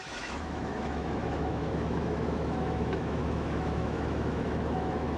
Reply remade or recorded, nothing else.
remade